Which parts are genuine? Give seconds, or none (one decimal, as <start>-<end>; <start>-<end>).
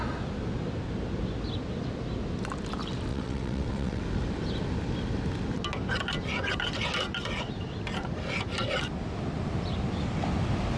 0.0-3.1; 4.0-10.8